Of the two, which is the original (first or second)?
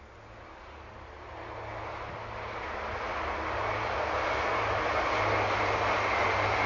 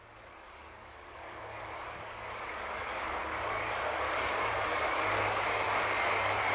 first